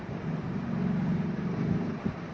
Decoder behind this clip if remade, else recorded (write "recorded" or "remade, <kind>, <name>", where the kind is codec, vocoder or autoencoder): recorded